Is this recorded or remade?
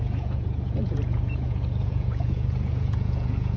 remade